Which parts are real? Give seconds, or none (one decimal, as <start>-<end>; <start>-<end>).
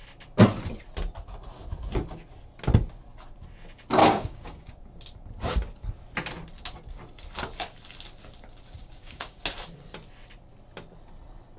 0.0-4.0; 4.8-8.8; 9.4-11.6